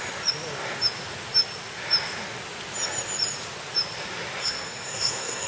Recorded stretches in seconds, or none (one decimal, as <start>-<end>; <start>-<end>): 0.0-4.4